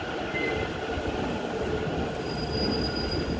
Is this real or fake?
real